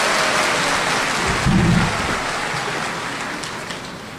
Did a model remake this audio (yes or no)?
no